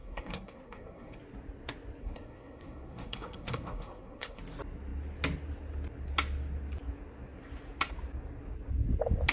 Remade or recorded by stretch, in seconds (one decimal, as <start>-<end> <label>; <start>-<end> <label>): 0.0-1.2 remade; 1.2-2.0 recorded; 2.0-4.4 remade; 4.4-9.3 recorded